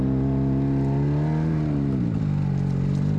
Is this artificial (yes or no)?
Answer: no